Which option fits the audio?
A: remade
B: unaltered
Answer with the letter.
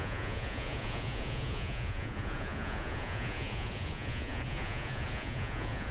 A